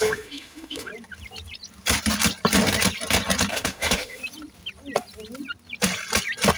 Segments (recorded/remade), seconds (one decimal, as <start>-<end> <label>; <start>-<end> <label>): 0.0-0.9 remade; 0.9-3.5 recorded; 3.5-4.2 remade; 4.2-6.6 recorded